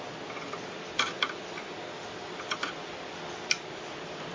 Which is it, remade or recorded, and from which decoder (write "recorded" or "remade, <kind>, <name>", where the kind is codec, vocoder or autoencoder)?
recorded